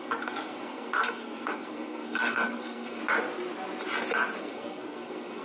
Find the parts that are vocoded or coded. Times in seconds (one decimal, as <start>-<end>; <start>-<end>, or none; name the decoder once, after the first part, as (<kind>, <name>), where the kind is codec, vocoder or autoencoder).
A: 0.0-3.0 (codec, SNAC); 4.4-5.4